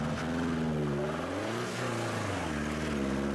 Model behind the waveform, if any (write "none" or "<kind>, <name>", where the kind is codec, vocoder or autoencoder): none